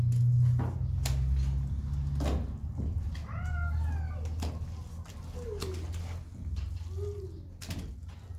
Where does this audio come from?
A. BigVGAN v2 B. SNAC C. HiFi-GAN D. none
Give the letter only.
D